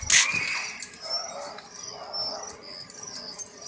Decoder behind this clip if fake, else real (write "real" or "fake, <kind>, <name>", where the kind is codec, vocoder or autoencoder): real